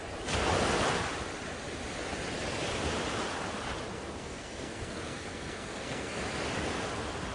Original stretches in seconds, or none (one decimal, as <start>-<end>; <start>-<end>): 0.0-3.9; 6.2-7.3